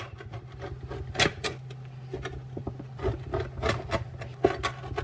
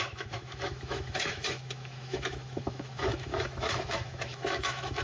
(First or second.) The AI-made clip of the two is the second